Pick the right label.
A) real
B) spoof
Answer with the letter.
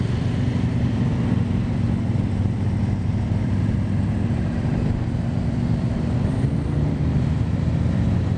B